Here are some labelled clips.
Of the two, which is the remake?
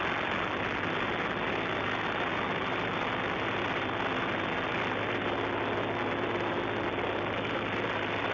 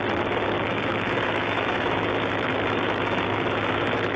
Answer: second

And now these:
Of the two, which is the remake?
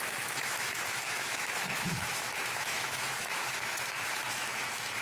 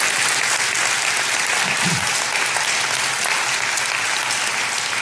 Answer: first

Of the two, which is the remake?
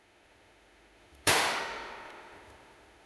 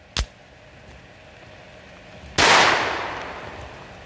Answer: first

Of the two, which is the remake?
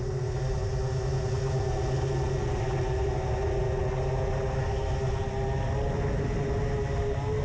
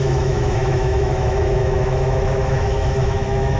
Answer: second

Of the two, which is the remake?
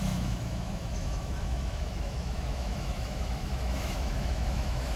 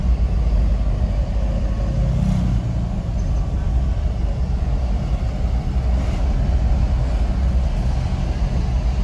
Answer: first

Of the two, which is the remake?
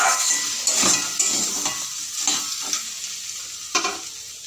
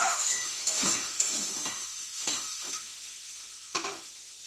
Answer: second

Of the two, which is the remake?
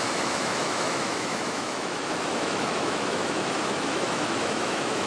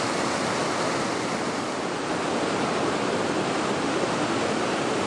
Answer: first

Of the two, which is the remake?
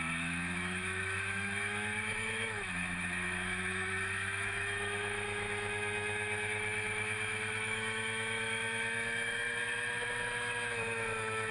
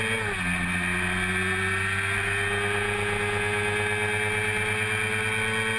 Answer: first